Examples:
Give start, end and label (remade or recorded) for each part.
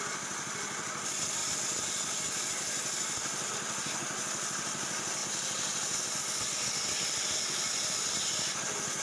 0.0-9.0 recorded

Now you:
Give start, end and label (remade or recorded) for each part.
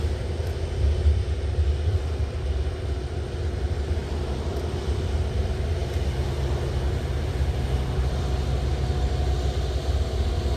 0.0-10.6 recorded